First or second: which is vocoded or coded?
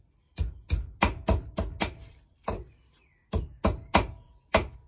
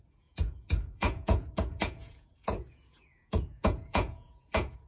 second